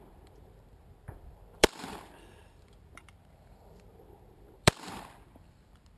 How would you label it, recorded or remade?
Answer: remade